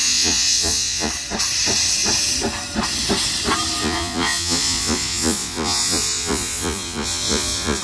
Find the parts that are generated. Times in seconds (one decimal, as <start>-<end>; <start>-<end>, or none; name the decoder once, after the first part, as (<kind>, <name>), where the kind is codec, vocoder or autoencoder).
0.0-1.1 (vocoder, Vocos); 3.8-7.8